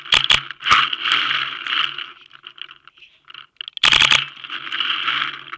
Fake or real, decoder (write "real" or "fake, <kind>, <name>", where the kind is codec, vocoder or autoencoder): real